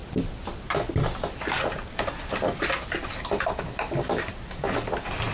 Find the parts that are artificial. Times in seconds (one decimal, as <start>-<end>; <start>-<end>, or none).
none